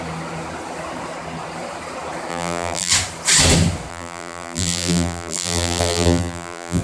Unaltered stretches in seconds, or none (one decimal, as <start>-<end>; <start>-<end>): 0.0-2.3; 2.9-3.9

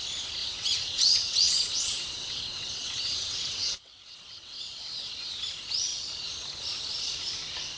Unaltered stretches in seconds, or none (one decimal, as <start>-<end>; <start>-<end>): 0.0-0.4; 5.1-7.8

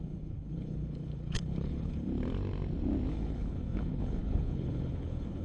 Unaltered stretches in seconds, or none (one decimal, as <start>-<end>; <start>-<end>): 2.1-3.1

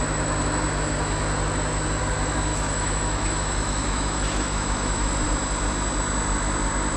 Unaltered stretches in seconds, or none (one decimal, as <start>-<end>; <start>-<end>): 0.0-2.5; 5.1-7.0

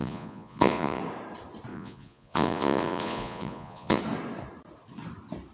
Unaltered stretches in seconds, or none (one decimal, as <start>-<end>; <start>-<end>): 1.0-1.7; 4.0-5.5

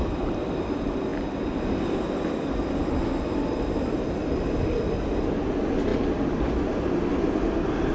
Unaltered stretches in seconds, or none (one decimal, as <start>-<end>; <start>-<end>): 0.0-7.9